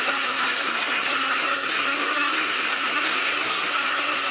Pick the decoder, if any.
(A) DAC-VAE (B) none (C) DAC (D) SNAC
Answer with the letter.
D